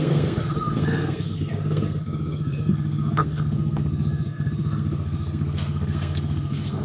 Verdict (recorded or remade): remade